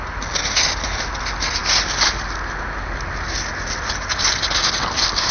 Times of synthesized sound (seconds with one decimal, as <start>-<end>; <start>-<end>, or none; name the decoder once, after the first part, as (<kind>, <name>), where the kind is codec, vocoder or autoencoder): none